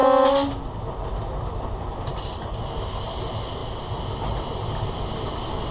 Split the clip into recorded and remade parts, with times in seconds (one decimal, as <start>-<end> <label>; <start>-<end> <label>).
0.0-5.7 recorded